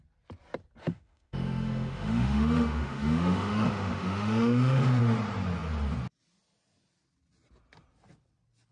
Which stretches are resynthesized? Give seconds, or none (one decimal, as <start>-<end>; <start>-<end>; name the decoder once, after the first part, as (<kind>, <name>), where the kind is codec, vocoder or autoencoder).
0.8-5.0 (autoencoder, DAC-VAE)